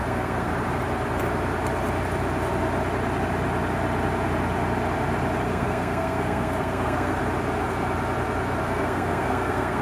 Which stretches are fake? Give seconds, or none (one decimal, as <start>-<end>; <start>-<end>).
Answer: 0.0-0.5; 5.4-7.2; 8.6-9.8